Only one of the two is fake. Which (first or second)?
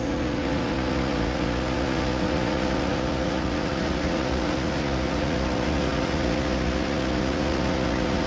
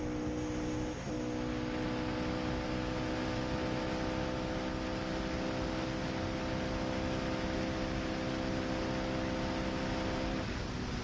first